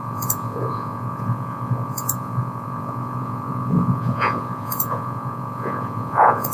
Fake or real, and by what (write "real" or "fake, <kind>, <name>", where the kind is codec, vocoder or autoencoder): fake, vocoder, Vocos